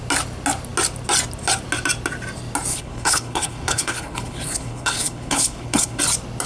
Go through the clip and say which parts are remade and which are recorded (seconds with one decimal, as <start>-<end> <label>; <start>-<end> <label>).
0.0-2.7 recorded; 2.7-6.0 remade; 6.0-6.5 recorded